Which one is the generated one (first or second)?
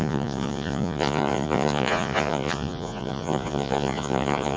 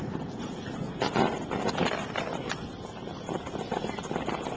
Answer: first